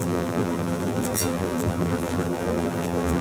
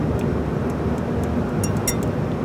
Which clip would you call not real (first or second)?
first